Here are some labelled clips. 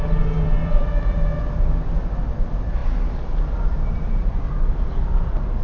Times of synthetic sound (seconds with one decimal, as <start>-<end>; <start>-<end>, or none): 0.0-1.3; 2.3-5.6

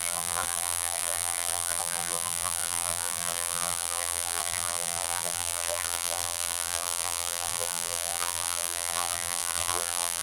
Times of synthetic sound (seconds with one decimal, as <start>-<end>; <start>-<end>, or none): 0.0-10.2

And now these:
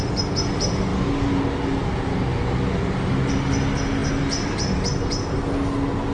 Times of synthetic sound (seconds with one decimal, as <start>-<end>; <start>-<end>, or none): none